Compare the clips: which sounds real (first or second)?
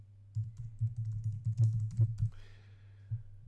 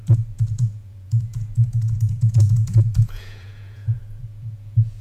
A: first